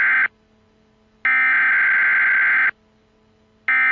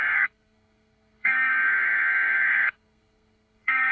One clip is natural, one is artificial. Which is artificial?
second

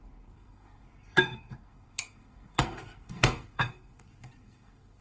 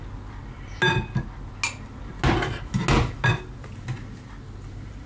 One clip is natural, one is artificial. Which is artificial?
first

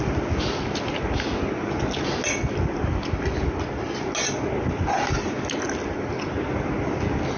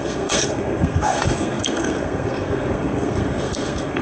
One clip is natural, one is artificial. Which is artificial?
second